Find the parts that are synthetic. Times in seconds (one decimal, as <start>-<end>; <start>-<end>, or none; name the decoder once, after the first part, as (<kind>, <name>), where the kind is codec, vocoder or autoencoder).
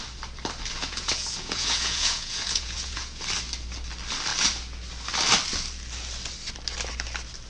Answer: 0.8-3.2 (vocoder, Vocos)